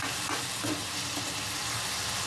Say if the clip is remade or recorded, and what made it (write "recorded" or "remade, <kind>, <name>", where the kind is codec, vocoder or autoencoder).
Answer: recorded